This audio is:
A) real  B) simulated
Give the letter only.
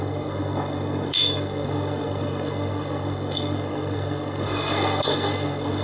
B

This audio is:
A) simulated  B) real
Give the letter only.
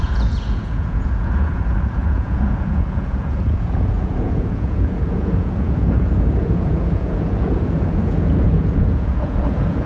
A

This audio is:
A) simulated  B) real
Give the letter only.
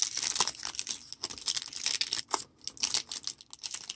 B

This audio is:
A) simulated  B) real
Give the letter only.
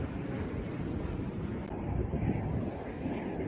B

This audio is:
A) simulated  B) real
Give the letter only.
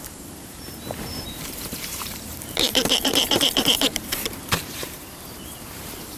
A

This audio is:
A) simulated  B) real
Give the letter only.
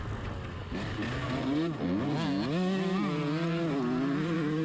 B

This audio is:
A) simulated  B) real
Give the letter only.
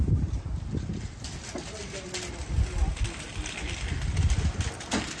B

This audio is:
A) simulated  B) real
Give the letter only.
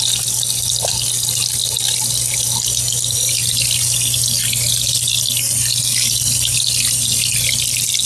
B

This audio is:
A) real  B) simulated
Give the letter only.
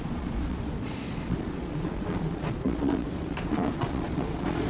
B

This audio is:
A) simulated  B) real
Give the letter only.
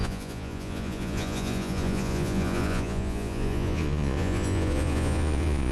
A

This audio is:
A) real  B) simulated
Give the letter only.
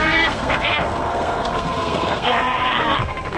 B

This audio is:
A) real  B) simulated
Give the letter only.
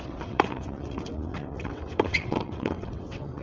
B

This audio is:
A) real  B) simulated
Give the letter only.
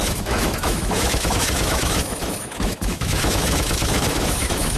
B